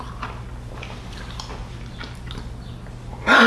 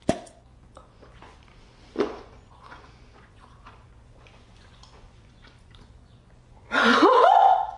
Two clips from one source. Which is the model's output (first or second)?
second